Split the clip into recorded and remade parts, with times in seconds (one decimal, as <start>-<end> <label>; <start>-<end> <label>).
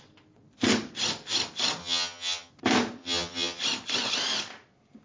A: 0.0-1.8 recorded; 1.8-2.5 remade; 2.5-3.0 recorded; 3.0-3.6 remade; 3.6-5.0 recorded